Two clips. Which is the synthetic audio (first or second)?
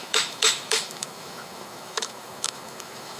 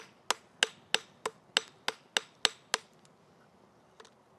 first